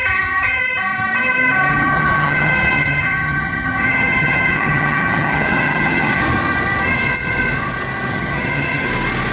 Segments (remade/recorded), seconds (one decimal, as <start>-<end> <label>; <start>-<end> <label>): 0.0-0.6 remade; 0.6-1.7 recorded; 1.7-6.2 remade; 6.2-8.1 recorded; 8.1-8.9 remade; 8.9-9.3 recorded